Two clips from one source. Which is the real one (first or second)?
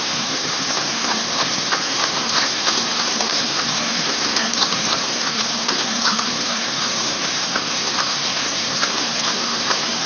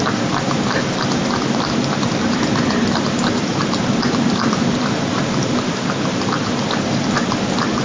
second